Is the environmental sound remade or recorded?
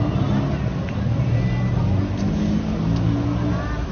recorded